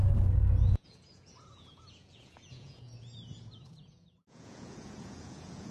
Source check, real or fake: fake